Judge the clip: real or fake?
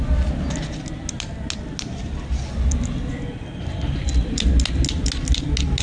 real